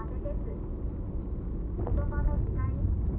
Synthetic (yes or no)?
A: no